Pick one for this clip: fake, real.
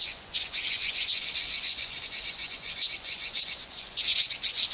fake